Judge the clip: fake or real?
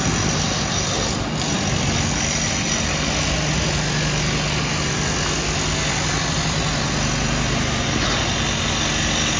real